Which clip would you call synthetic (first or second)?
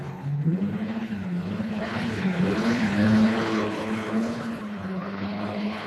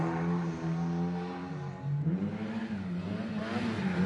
first